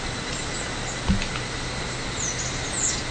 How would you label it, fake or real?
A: real